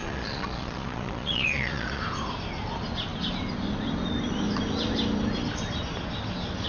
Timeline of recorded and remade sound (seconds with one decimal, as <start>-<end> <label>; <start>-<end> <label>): 0.0-2.0 remade; 2.0-6.7 recorded